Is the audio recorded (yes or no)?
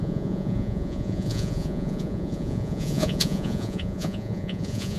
no